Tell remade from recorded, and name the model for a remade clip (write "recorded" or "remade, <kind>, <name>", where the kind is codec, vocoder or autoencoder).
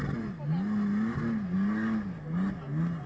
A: recorded